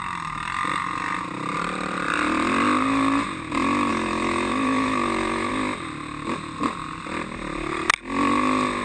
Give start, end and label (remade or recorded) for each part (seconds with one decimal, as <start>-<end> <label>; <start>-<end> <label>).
0.0-3.9 recorded; 3.9-5.5 remade; 5.5-8.8 recorded